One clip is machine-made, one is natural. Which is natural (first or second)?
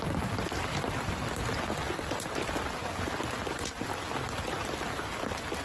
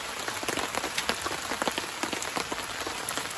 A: second